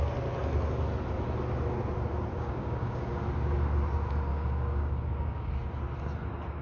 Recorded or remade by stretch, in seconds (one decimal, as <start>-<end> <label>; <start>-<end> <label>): 0.0-2.3 recorded; 2.3-3.1 remade; 3.1-4.3 recorded; 4.3-5.5 remade; 5.5-6.6 recorded